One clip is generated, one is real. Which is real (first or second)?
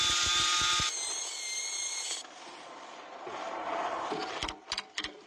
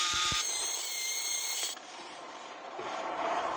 first